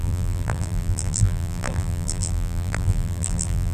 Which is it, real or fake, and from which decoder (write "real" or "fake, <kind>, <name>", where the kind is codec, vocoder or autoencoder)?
fake, vocoder, BigVGAN v2